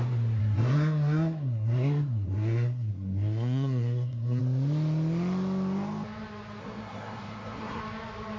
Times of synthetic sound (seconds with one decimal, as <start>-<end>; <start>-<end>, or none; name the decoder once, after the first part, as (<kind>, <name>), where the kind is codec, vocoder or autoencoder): 0.4-4.4 (codec, SNAC); 6.6-7.8